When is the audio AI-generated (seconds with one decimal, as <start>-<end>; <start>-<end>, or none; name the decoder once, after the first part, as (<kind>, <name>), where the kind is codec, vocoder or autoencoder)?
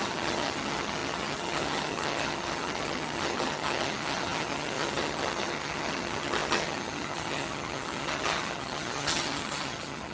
0.0-10.1 (vocoder, HiFi-GAN)